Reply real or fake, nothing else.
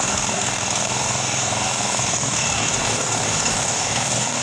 fake